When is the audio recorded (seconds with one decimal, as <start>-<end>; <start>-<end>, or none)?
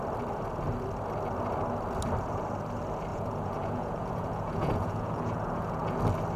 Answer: 0.0-3.1; 6.0-6.4